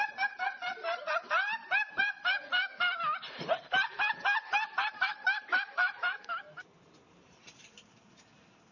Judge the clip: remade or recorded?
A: remade